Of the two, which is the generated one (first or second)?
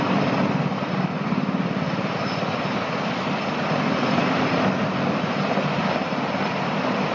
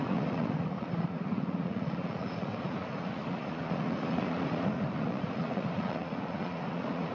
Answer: second